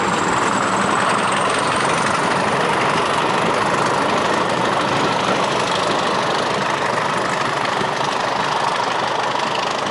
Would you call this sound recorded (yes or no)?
yes